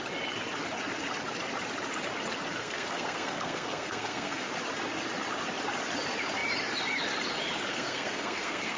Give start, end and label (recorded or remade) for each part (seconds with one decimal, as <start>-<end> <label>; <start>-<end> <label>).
0.0-2.6 recorded; 2.6-4.5 remade; 4.5-7.7 recorded; 7.7-8.8 remade